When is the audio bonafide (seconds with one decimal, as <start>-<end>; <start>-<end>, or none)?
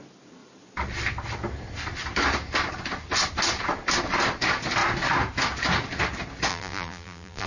0.0-6.5